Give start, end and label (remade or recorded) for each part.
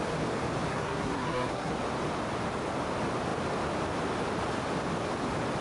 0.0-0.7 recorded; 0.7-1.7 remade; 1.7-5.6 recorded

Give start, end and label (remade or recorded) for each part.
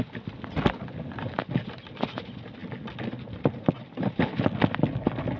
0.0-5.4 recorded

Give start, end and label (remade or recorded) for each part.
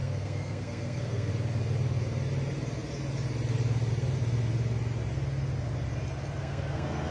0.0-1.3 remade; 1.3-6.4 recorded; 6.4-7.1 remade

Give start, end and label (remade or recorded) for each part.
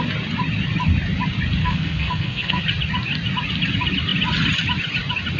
0.0-1.6 recorded; 1.6-2.6 remade; 2.6-5.4 recorded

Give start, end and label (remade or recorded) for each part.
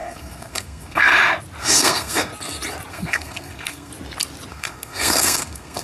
0.0-1.1 remade; 1.1-1.6 recorded; 1.6-2.3 remade; 2.3-2.9 recorded; 2.9-3.9 remade; 3.9-4.5 recorded; 4.5-5.8 remade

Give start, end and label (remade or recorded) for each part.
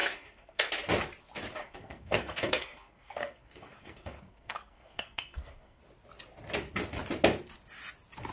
0.0-0.7 remade; 0.7-1.6 recorded; 1.6-5.8 remade; 5.8-8.3 recorded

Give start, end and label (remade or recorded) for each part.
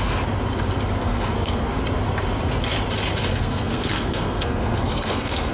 0.0-1.0 recorded; 1.0-1.7 remade; 1.7-3.3 recorded; 3.3-5.5 remade